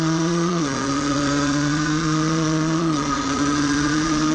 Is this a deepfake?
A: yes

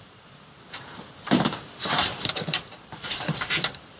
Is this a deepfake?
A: yes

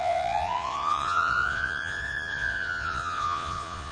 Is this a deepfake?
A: yes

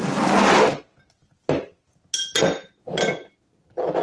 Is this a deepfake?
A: no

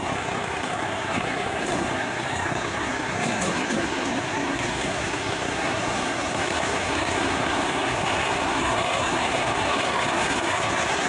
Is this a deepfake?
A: yes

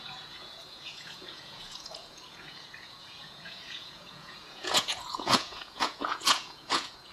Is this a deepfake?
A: yes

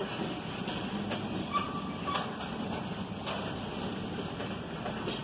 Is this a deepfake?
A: no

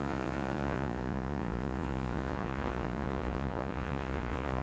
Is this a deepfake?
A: yes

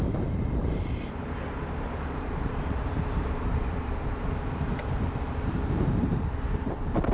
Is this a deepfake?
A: yes